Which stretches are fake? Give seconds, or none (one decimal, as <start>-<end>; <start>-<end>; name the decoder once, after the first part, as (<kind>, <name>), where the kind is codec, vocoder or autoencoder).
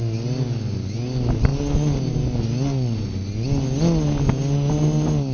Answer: none